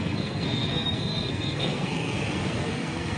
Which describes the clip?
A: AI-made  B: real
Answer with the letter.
A